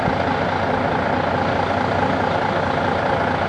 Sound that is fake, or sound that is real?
real